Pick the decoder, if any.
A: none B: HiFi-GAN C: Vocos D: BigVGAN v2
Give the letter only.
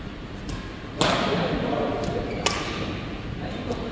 A